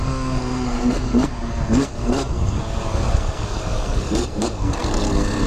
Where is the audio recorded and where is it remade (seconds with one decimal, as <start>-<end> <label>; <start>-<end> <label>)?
0.0-5.5 remade